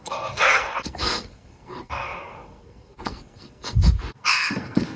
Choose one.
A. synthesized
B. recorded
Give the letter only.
A